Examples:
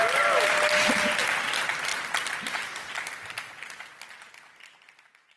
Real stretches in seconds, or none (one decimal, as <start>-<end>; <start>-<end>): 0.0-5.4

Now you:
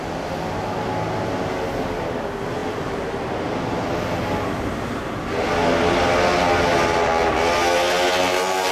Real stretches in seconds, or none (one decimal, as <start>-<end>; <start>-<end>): 0.0-2.6; 3.3-8.7

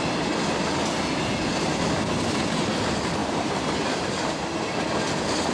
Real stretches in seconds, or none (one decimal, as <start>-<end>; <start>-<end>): 0.0-1.5; 2.4-3.2; 4.1-5.5

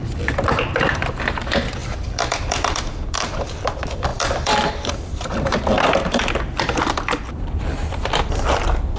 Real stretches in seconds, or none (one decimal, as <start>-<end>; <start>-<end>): none